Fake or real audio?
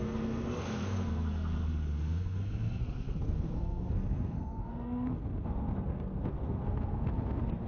fake